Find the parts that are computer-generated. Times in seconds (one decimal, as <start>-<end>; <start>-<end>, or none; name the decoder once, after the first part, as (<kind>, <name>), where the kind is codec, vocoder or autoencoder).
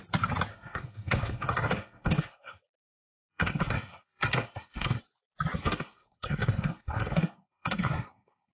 0.5-2.6 (codec, SNAC); 3.3-5.0; 5.6-8.5